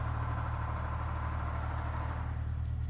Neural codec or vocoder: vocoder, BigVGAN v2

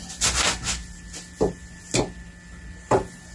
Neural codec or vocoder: none